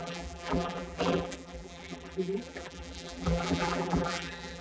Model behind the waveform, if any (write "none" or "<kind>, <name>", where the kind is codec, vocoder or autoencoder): vocoder, BigVGAN v2